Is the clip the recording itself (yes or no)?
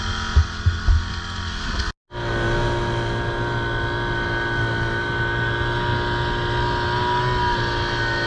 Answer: yes